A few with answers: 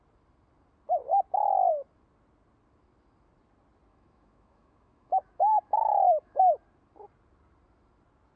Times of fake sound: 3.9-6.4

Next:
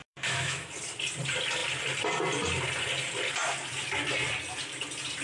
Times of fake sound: 0.0-0.7

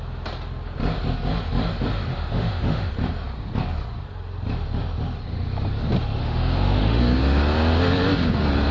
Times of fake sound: 2.1-2.9; 6.2-7.0